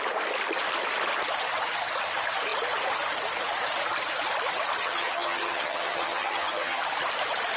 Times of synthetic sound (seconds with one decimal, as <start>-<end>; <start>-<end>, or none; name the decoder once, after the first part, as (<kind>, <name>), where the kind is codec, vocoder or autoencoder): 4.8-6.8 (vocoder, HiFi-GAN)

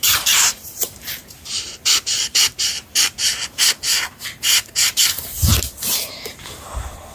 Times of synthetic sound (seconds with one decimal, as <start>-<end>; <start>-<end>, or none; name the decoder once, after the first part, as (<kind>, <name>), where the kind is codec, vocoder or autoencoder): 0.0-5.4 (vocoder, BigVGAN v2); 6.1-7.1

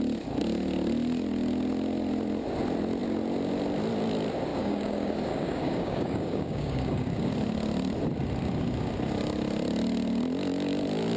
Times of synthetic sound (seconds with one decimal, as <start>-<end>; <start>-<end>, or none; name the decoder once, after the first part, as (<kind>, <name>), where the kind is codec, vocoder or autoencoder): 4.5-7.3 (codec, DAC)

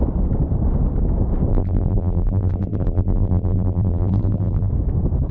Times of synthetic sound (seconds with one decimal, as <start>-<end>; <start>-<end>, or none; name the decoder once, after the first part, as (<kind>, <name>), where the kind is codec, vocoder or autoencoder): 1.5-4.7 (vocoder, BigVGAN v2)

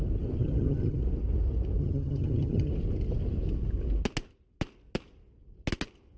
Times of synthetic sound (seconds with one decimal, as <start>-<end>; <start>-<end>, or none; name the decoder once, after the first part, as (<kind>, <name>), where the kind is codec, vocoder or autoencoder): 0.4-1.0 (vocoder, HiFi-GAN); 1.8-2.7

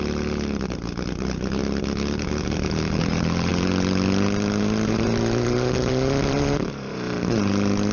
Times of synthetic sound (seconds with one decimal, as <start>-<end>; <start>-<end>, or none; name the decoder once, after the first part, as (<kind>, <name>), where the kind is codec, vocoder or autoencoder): 0.0-1.6 (vocoder, BigVGAN v2); 3.0-3.5; 4.6-7.9

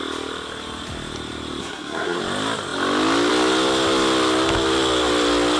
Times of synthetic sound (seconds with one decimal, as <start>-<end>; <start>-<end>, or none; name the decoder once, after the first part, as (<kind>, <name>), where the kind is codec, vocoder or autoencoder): 1.6-2.2 (codec, SNAC)

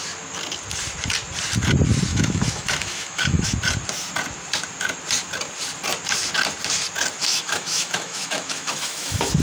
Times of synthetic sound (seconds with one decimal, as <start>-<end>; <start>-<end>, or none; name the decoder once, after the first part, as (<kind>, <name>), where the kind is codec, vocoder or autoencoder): 2.1-3.5 (autoencoder, DAC-VAE); 7.2-9.4